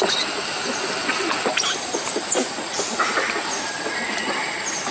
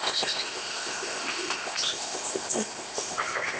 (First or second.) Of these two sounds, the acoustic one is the first